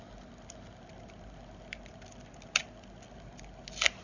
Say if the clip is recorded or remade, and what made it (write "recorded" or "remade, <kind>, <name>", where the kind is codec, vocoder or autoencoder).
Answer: recorded